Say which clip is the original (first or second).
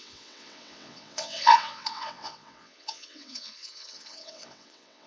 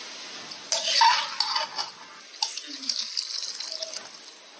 second